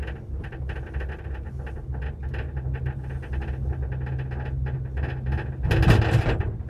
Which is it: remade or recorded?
recorded